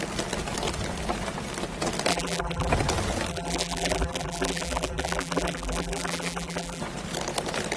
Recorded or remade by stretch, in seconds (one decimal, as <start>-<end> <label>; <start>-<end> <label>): 0.0-2.1 recorded; 2.1-2.7 remade; 2.7-3.3 recorded; 3.3-6.8 remade; 6.8-7.8 recorded